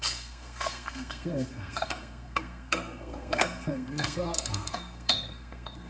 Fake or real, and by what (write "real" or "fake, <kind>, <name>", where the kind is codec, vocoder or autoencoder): fake, codec, SNAC